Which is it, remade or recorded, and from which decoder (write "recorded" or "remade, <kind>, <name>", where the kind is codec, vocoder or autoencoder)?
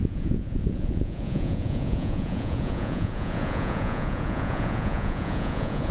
remade, vocoder, Vocos